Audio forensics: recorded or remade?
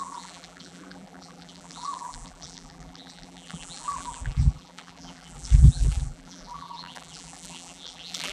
remade